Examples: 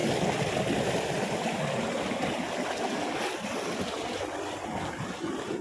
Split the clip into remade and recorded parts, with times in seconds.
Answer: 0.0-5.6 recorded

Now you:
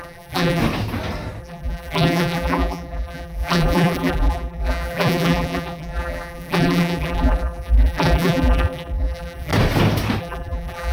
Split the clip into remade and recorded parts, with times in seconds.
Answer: 0.0-0.6 remade; 0.6-1.4 recorded; 1.4-9.5 remade; 9.5-10.2 recorded; 10.2-10.9 remade

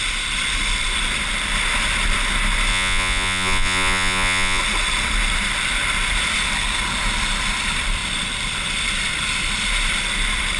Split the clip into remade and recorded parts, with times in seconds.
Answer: 0.0-2.7 recorded; 2.7-4.6 remade; 4.6-10.6 recorded

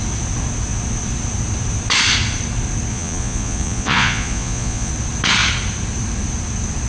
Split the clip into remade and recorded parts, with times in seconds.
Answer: 0.0-2.9 recorded; 2.9-4.9 remade; 4.9-6.9 recorded

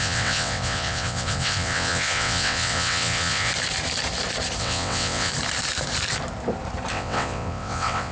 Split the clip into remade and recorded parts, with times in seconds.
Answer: 0.0-3.5 remade; 3.5-4.6 recorded; 4.6-5.3 remade; 5.3-6.9 recorded; 6.9-8.1 remade

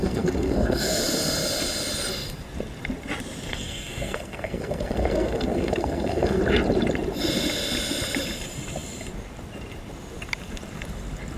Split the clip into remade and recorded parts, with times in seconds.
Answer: 0.0-1.0 remade; 1.0-3.5 recorded; 3.5-6.4 remade; 6.4-11.4 recorded

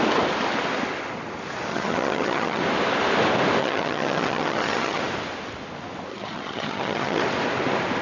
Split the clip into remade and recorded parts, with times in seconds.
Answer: 0.0-1.7 recorded; 1.7-2.6 remade; 2.6-3.6 recorded; 3.6-5.0 remade; 5.0-6.1 recorded; 6.1-7.2 remade; 7.2-8.0 recorded